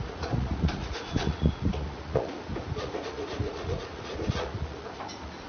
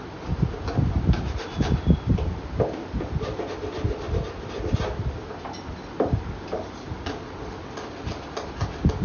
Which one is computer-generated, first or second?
first